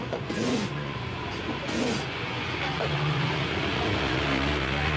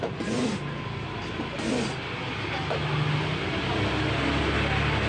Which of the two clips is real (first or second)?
second